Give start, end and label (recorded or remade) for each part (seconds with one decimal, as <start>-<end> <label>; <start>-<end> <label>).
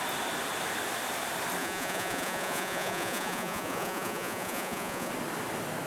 0.0-1.6 recorded; 1.6-5.1 remade; 5.1-5.9 recorded